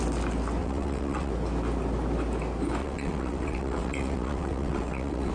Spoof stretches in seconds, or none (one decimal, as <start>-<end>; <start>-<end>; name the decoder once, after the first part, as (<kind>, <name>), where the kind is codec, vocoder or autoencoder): 0.6-1.3 (vocoder, WaveNeXt); 2.8-5.3